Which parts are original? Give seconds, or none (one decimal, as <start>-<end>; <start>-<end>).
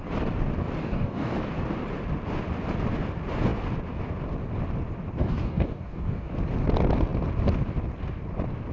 0.0-0.8; 1.4-5.2; 6.3-8.7